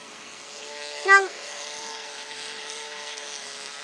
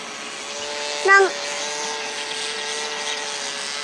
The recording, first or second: second